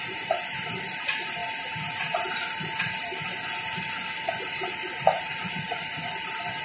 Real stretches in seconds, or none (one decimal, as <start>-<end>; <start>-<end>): 1.4-4.4; 5.3-6.6